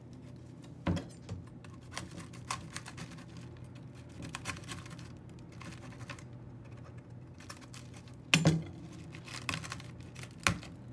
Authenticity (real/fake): real